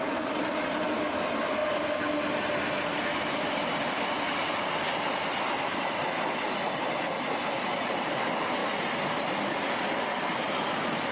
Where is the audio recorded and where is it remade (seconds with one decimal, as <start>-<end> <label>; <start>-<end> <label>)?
0.0-11.1 recorded

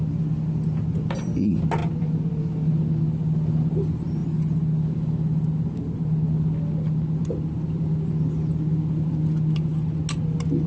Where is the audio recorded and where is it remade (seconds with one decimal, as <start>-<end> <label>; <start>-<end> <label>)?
0.0-10.7 recorded